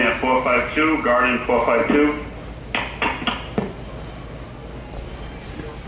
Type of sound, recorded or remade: recorded